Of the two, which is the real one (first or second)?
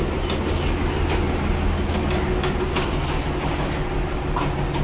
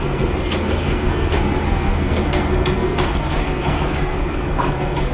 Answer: first